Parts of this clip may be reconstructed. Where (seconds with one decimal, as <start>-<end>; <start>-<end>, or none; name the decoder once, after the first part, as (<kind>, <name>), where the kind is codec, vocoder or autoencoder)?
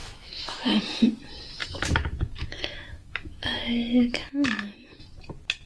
0.0-0.8 (autoencoder, DAC-VAE); 1.6-5.0